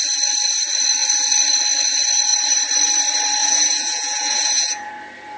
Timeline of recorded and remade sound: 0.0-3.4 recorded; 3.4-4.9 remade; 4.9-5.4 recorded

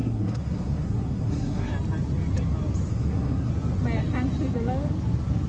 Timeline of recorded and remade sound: 0.0-1.7 remade; 1.7-2.9 recorded; 2.9-3.5 remade; 3.5-5.5 recorded

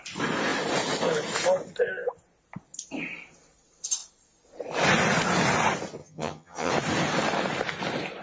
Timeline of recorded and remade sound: 0.0-6.0 recorded; 6.0-6.7 remade; 6.7-8.2 recorded

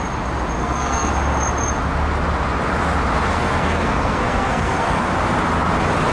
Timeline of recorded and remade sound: 0.0-0.6 recorded; 0.6-1.1 remade; 1.1-3.3 recorded; 3.3-5.1 remade; 5.1-6.1 recorded

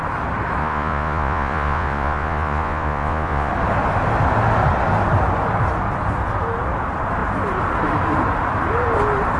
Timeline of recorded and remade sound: 0.0-0.6 recorded; 0.6-3.5 remade; 3.5-9.4 recorded